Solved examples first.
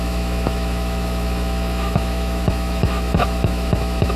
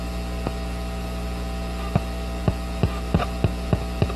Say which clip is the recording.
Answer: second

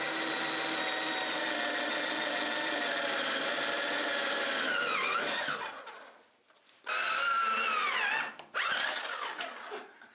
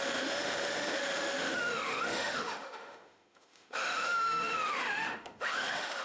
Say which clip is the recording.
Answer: first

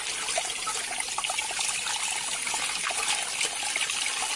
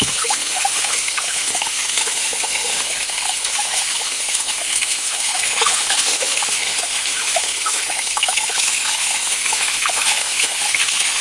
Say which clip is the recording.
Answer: first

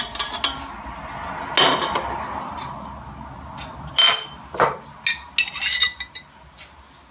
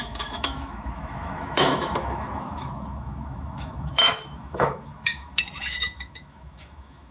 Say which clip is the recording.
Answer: first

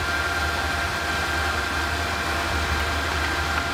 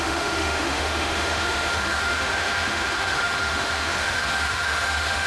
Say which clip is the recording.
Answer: first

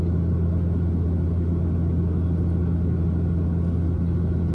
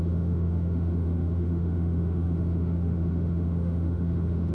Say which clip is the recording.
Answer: first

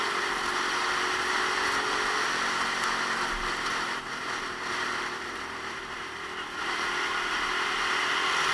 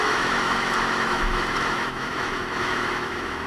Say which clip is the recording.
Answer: first